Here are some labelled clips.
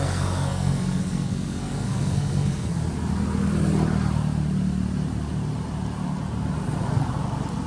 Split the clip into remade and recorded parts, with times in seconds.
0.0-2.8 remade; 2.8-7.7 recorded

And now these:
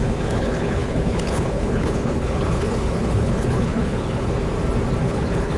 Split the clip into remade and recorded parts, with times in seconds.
0.0-4.4 remade; 4.4-5.0 recorded; 5.0-5.6 remade

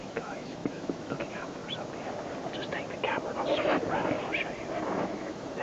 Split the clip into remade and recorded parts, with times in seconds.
0.0-1.6 remade; 1.6-5.0 recorded; 5.0-5.6 remade

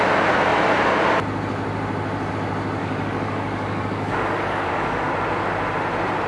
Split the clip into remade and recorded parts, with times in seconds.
0.0-2.8 recorded; 2.8-5.1 remade; 5.1-6.3 recorded

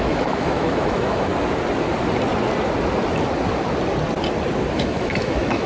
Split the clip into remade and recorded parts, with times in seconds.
0.0-1.3 remade; 1.3-4.7 recorded; 4.7-5.7 remade

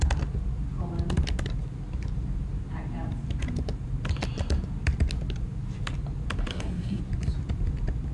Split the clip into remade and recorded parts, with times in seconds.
0.0-6.5 recorded; 6.5-7.0 remade; 7.0-8.1 recorded

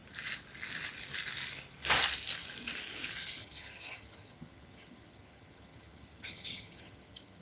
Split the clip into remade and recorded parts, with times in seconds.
0.0-3.4 recorded; 3.4-7.4 remade

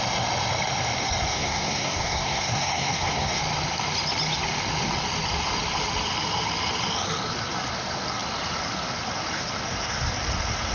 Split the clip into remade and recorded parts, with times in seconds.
0.0-1.3 recorded; 1.3-3.4 remade; 3.4-10.7 recorded